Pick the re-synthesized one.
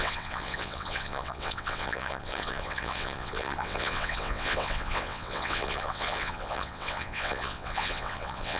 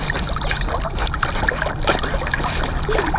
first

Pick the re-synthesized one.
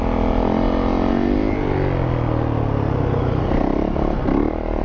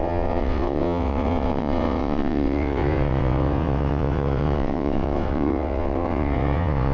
second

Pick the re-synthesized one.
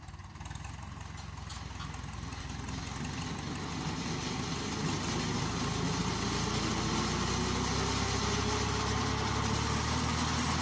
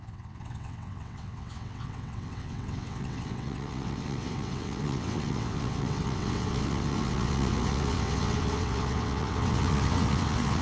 second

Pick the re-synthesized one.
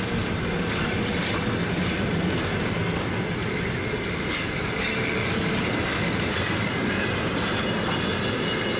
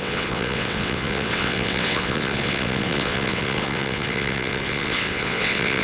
second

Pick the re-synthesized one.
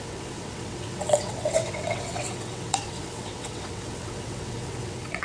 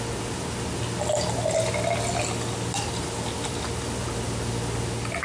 first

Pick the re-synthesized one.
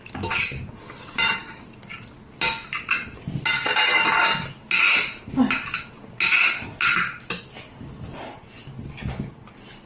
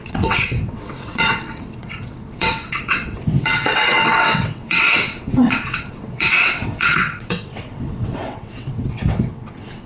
second